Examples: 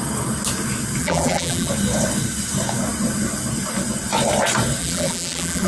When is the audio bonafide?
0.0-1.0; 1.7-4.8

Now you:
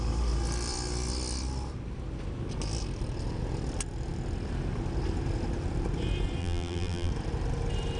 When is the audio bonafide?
0.0-6.4; 7.1-8.0

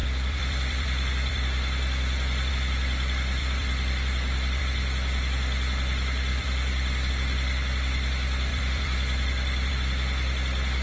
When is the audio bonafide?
2.5-3.4; 4.6-6.3; 7.1-8.5; 9.7-10.8

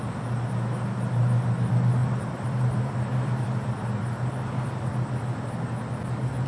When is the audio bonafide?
0.0-2.0; 5.1-6.5

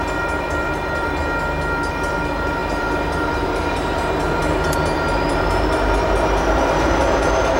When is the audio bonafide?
1.2-1.9

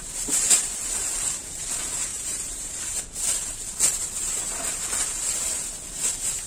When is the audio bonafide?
0.0-2.1; 3.0-6.5